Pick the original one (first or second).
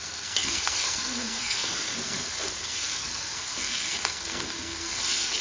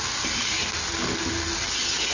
second